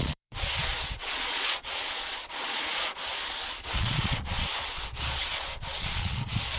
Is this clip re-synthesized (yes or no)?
yes